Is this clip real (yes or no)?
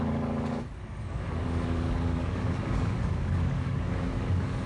no